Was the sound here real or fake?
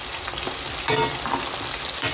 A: real